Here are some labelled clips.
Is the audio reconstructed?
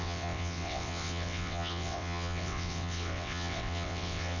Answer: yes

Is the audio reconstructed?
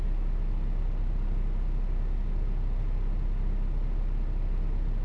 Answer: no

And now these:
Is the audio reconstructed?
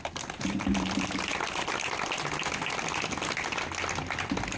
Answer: no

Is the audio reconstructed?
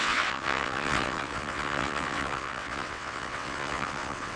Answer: yes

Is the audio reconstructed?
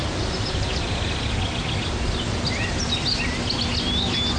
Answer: no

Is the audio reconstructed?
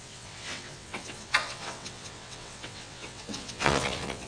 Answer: yes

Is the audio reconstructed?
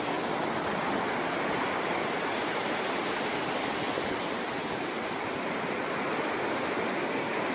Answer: no